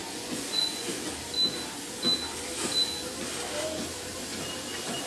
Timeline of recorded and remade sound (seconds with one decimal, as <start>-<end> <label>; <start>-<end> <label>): 0.0-1.1 remade; 1.1-5.1 recorded